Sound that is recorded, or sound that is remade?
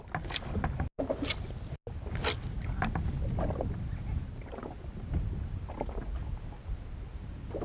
recorded